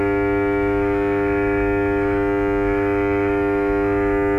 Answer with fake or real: fake